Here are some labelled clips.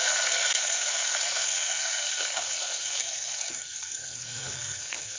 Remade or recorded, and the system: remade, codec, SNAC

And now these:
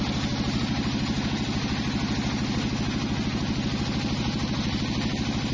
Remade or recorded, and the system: recorded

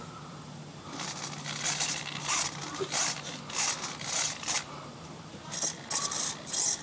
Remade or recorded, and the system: recorded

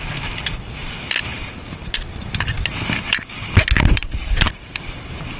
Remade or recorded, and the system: recorded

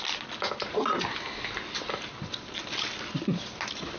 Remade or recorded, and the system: recorded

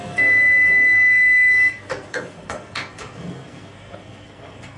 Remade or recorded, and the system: remade, codec, SNAC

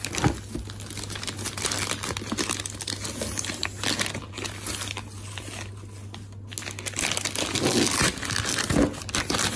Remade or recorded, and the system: recorded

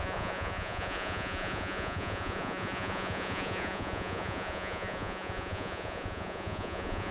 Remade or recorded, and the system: remade, vocoder, Vocos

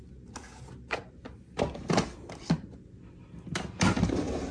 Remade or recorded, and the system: recorded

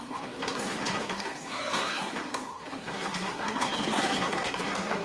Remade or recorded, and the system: remade, codec, SNAC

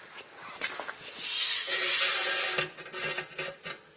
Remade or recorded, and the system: recorded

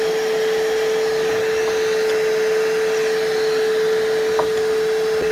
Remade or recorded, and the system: recorded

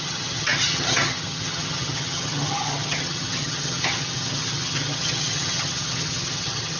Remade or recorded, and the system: remade, vocoder, HiFi-GAN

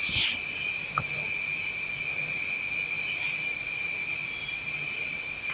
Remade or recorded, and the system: recorded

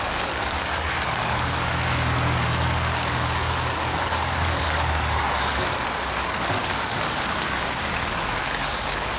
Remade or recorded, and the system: remade, codec, DAC